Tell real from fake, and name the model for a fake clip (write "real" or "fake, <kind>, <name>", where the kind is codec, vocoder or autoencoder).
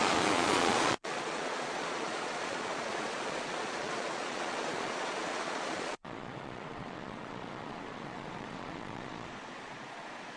fake, vocoder, Vocos